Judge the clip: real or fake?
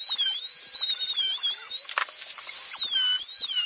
real